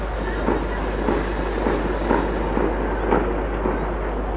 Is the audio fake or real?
real